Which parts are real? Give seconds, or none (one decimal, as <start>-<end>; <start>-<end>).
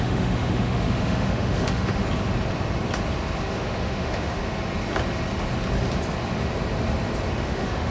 2.0-3.4; 4.4-7.3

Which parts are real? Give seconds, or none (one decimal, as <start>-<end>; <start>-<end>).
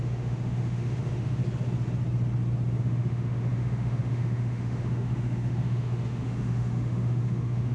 1.4-2.8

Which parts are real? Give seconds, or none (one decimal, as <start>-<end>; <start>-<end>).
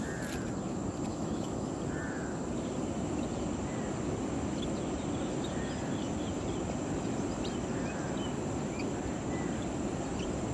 0.0-1.1; 1.7-10.5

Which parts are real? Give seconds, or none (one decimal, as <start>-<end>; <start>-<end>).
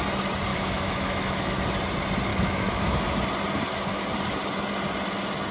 0.0-0.5; 1.6-2.3; 3.0-5.5